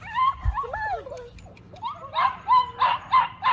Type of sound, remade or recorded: recorded